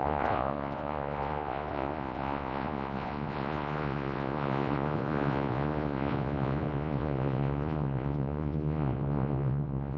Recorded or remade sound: remade